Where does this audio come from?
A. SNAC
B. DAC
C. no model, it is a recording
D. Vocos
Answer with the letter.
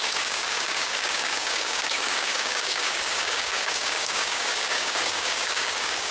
B